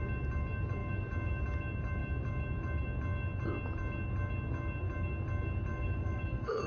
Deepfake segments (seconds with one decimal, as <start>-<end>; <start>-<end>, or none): 5.7-6.7